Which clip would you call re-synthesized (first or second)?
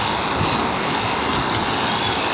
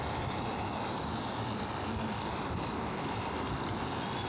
second